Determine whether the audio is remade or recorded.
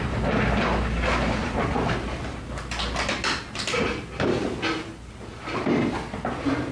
recorded